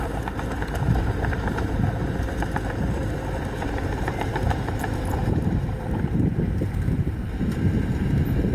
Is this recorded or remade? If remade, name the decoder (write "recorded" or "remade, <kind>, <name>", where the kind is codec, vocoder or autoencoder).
remade, vocoder, BigVGAN v2